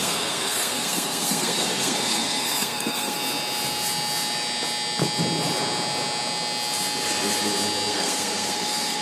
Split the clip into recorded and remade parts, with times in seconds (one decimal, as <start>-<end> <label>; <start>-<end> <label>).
0.0-3.2 remade; 3.2-7.9 recorded; 7.9-9.0 remade

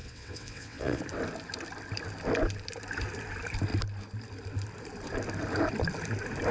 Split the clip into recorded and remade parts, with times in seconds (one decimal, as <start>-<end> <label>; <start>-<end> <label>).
0.0-1.0 remade; 1.0-6.5 recorded